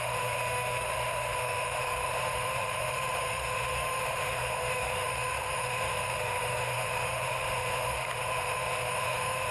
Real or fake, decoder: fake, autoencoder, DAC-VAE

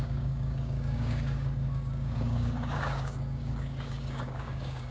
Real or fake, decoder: fake, codec, DAC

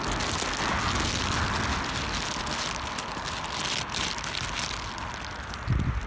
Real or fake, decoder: real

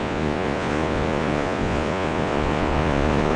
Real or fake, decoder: fake, vocoder, Vocos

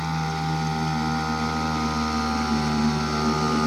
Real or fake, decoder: real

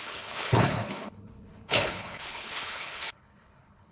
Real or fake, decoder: fake, codec, HILCodec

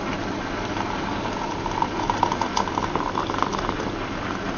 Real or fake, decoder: real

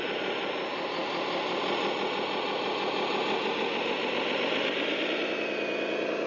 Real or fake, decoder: real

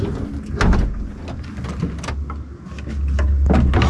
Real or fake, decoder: real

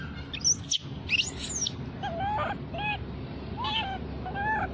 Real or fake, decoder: real